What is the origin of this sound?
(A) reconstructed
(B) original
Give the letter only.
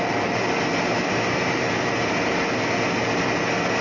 B